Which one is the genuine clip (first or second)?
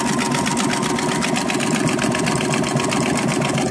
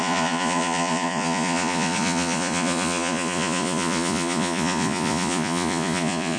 first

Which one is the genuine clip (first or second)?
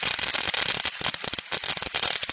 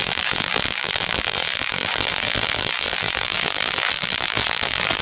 first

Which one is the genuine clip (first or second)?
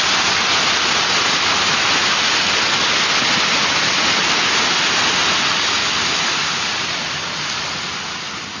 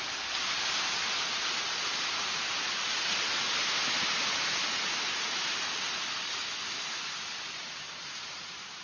first